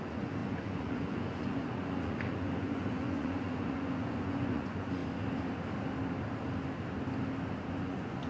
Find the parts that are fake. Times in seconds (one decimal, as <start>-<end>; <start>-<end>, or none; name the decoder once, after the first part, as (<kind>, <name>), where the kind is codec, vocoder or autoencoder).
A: 0.0-5.0 (vocoder, Vocos); 7.7-8.3